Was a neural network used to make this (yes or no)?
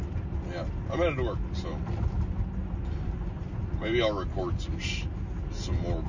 no